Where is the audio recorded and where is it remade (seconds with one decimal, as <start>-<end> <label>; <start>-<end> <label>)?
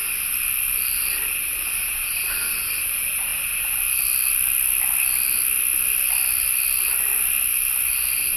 0.0-8.4 recorded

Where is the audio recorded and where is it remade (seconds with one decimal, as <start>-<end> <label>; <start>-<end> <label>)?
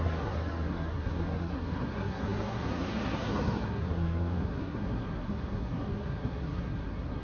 0.0-7.2 remade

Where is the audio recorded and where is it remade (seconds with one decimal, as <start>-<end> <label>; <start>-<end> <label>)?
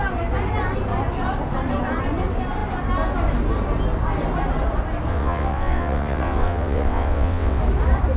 0.0-5.1 recorded; 5.1-7.6 remade; 7.6-8.2 recorded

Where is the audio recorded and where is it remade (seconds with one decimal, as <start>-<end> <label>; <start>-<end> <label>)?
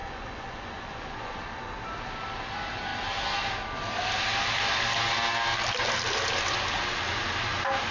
0.0-1.4 remade; 1.4-7.9 recorded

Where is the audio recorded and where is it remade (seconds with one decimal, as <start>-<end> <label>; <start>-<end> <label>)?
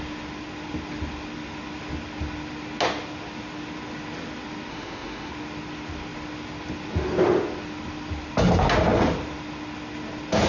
0.0-4.7 recorded; 4.7-5.3 remade; 5.3-10.5 recorded